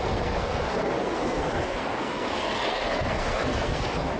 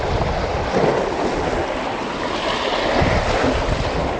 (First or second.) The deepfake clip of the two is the first